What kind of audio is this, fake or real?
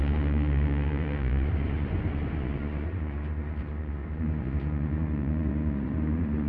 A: fake